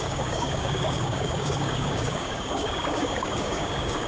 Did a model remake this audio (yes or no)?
yes